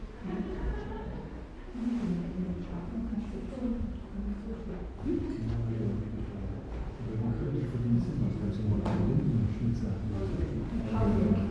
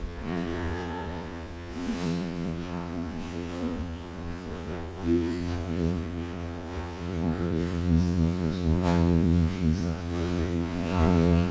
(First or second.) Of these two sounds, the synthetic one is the second